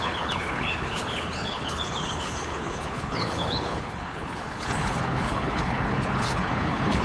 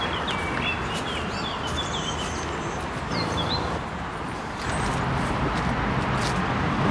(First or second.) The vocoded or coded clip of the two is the first